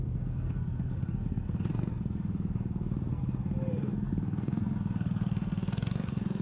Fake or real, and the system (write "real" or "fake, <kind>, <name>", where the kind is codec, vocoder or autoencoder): fake, codec, SNAC